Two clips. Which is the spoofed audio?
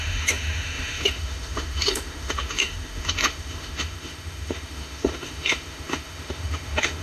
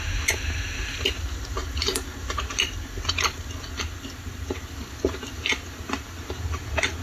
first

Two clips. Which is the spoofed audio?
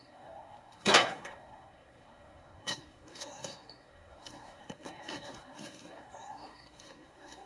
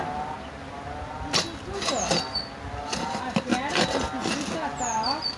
first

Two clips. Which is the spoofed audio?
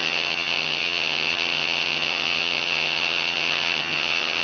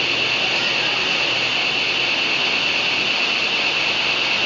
first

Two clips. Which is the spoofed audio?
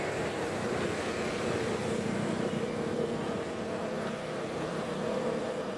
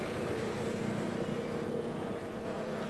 first